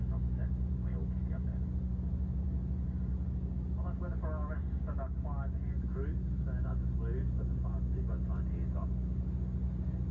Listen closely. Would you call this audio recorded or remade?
recorded